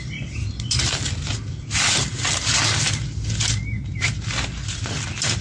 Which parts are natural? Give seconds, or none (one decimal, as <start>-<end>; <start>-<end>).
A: 0.0-5.4